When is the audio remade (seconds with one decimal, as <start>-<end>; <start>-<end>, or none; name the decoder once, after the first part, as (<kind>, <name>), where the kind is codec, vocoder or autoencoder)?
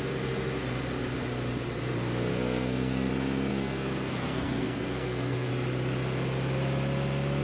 2.3-3.1 (codec, SNAC); 3.5-5.5